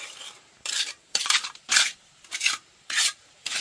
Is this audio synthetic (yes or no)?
yes